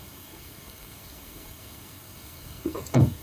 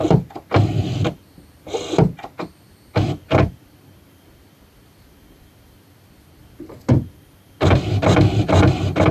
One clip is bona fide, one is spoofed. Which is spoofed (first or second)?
first